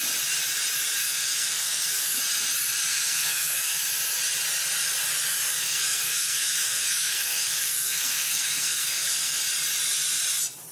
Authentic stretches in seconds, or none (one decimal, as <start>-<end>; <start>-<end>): 0.0-1.0; 2.2-2.9; 3.8-5.5; 9.4-10.7

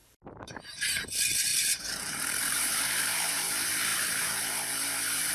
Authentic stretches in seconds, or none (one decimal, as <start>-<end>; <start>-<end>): none

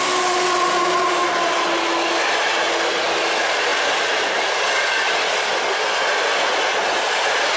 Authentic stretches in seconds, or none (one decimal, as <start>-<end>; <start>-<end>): 0.0-7.6

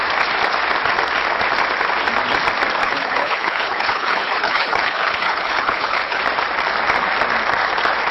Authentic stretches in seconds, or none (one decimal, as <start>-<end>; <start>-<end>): 0.0-2.8; 6.2-8.1

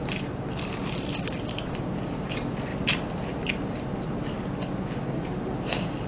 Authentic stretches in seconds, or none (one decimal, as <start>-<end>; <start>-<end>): 0.0-2.7; 3.5-6.1

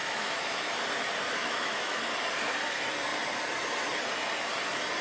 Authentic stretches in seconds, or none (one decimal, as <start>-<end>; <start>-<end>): 0.7-1.4; 2.0-5.0

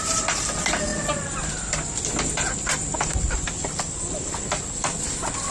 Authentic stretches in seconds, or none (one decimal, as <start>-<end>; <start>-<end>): 0.0-5.5